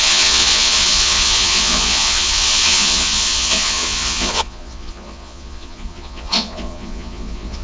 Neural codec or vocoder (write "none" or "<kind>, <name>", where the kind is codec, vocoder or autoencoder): vocoder, Vocos